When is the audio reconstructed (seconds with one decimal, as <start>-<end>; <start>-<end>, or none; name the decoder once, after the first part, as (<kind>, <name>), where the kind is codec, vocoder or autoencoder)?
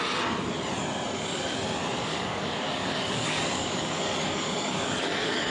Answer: 2.0-5.5 (codec, DAC)